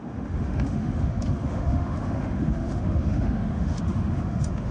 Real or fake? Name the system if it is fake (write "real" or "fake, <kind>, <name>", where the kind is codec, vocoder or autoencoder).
fake, autoencoder, DAC-VAE